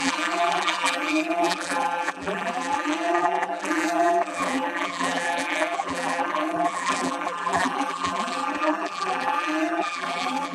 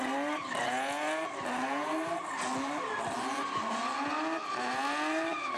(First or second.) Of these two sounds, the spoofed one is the first